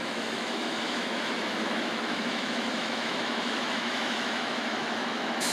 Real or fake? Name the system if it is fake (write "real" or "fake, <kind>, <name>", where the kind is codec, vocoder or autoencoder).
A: fake, autoencoder, DAC-VAE